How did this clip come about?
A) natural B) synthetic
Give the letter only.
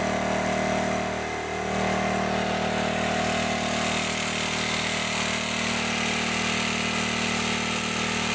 A